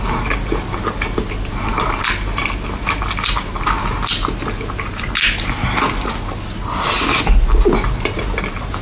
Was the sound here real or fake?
real